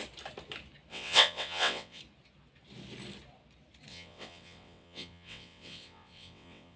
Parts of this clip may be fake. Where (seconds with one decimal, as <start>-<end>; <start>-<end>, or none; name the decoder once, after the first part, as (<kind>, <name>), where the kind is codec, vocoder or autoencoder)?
0.9-2.0 (vocoder, WaveNeXt); 3.9-6.8